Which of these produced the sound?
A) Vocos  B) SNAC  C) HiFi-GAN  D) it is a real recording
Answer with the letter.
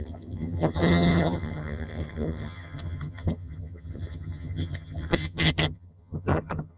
C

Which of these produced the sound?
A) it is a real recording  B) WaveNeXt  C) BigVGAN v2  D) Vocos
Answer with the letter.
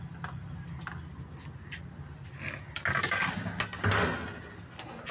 A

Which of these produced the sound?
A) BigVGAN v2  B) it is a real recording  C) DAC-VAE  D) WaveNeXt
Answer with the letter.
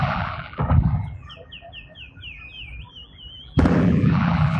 A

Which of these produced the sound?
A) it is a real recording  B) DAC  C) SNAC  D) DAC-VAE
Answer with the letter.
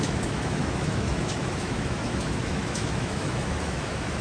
D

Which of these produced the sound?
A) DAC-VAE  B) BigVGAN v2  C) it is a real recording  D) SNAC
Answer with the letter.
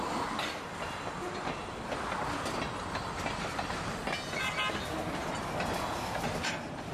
C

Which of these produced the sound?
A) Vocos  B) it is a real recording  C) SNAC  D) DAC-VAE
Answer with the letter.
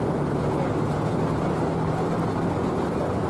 B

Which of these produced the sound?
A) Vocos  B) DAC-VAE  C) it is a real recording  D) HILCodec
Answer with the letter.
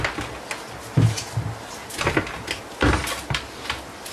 C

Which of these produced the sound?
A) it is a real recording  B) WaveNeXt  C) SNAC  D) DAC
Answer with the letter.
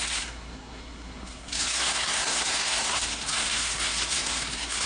C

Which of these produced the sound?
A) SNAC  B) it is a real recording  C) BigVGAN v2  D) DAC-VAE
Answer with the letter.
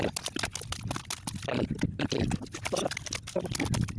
B